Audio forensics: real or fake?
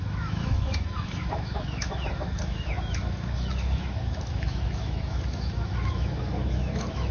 fake